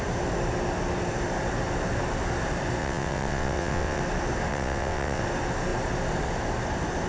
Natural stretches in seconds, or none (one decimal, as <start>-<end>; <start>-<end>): 0.0-2.8; 4.0-4.5; 5.2-7.1